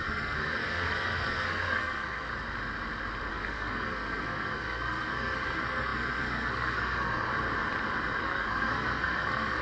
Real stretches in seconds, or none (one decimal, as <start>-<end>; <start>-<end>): 2.3-3.3; 7.3-8.2